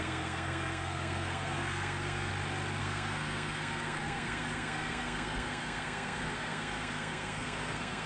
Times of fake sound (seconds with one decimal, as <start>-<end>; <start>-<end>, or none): 0.0-2.3; 2.8-8.1